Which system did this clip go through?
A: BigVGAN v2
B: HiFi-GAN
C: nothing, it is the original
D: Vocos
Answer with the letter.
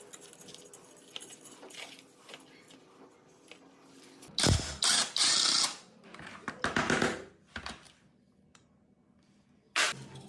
C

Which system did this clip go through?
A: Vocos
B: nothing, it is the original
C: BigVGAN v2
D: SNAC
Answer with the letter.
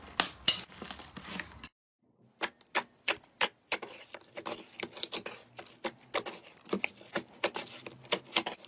B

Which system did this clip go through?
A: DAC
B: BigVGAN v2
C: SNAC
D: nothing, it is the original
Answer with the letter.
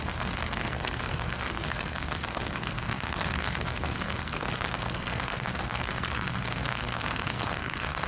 C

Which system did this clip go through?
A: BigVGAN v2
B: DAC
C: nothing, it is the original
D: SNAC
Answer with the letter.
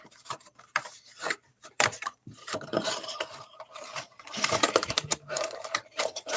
A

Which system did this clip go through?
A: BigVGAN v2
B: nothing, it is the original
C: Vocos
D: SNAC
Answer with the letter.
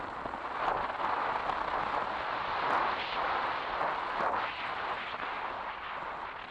B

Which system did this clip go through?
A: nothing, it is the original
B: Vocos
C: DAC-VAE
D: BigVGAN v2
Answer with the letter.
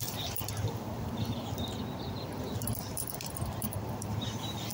D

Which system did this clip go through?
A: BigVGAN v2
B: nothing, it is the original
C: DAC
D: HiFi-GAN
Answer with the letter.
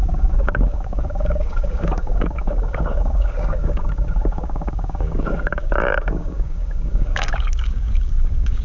C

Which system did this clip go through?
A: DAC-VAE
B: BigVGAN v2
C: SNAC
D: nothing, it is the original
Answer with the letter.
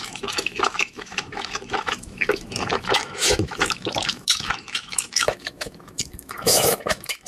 A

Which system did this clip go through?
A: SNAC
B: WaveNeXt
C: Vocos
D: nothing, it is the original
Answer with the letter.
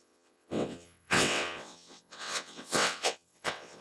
B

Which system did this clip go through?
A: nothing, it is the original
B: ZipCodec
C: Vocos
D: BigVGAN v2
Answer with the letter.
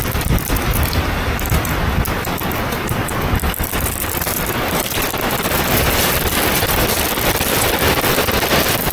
D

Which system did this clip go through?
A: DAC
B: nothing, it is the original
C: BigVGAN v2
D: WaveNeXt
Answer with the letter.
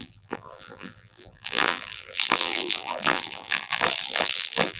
C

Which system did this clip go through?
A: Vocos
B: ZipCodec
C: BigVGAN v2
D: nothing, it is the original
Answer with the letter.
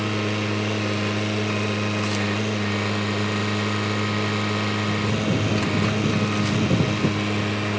D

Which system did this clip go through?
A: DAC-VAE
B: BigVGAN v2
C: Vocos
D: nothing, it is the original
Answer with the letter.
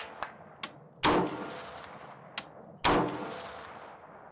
D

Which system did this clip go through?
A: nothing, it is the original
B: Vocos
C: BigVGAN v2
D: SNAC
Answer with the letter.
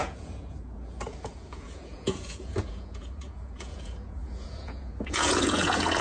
B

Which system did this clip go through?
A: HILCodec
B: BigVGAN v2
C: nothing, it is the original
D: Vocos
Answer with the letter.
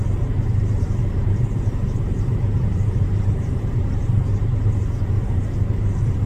B